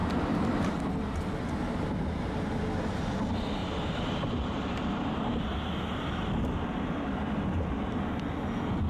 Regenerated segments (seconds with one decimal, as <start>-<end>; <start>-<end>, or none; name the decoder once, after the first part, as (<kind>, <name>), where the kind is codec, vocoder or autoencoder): 3.6-5.4 (vocoder, BigVGAN v2)